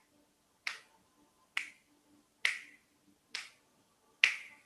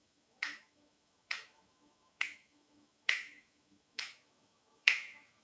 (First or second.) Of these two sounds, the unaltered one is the first